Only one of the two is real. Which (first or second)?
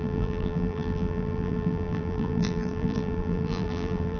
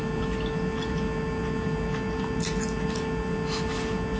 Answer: second